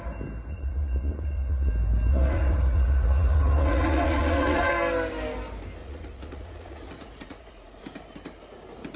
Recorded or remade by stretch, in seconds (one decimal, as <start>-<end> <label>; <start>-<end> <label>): 0.0-0.5 recorded; 0.5-1.7 remade; 1.7-2.1 recorded; 2.1-4.7 remade; 4.7-5.8 recorded; 5.8-7.8 remade; 7.8-9.0 recorded